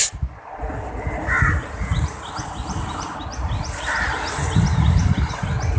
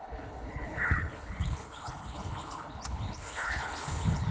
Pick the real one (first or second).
first